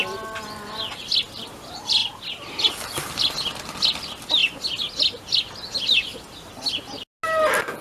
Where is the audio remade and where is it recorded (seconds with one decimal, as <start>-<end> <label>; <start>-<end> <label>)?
0.0-7.8 recorded